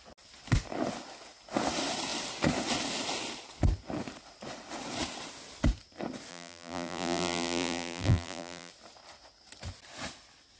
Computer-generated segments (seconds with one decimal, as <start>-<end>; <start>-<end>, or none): 6.3-8.7